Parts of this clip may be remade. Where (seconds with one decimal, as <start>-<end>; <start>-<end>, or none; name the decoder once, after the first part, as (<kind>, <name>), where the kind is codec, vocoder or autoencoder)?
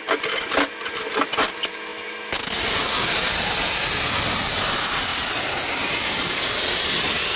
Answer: none